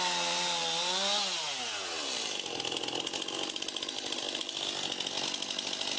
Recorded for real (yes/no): yes